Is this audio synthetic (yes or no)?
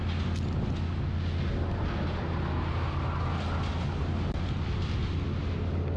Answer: no